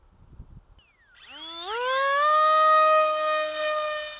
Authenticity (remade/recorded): recorded